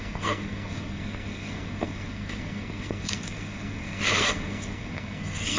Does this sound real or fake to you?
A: fake